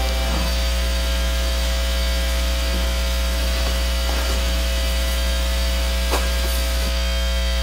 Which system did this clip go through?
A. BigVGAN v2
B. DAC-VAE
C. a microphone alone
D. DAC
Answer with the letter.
B